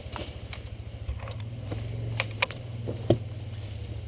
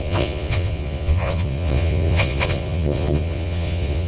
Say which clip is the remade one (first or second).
second